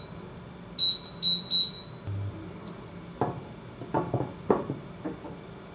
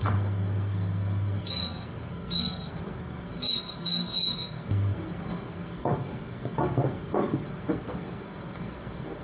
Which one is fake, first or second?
second